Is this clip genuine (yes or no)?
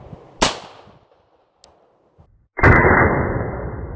yes